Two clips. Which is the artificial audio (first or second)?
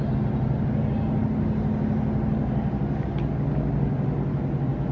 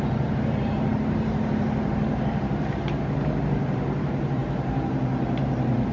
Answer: second